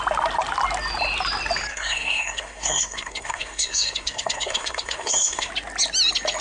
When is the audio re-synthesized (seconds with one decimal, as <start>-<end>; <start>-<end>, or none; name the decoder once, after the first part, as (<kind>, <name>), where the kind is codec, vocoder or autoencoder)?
1.7-5.5 (codec, SNAC)